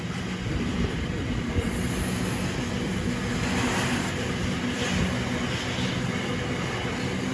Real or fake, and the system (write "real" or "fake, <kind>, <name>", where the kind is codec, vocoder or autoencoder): real